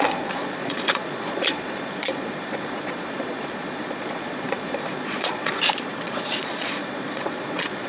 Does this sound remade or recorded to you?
remade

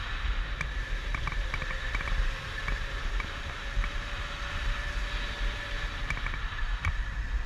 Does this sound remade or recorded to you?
remade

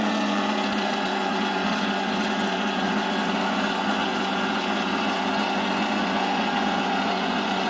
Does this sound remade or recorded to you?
remade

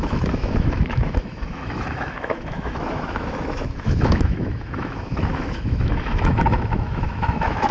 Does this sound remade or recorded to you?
remade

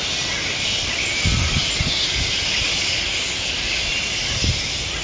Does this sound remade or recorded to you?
recorded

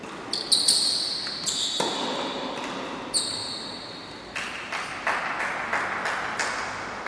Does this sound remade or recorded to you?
recorded